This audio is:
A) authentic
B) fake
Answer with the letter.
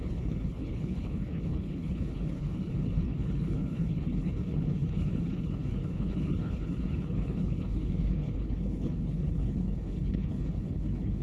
B